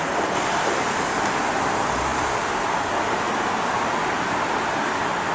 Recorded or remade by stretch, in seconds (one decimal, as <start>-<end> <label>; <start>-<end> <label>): 0.0-5.3 recorded